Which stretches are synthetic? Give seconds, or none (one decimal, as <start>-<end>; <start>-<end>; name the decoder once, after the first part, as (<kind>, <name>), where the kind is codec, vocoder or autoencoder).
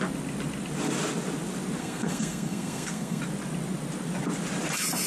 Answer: 1.8-3.2 (codec, SNAC)